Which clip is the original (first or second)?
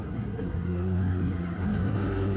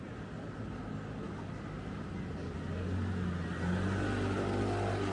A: second